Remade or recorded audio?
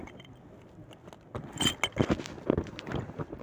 recorded